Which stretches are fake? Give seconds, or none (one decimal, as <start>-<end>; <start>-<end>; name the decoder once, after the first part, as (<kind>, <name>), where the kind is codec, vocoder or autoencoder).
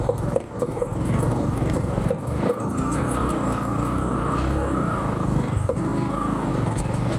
0.0-7.2 (codec, DAC)